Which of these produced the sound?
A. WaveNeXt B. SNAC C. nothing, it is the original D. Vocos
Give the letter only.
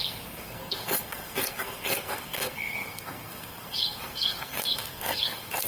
B